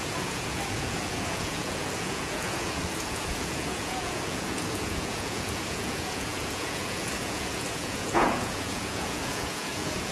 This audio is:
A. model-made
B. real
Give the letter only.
A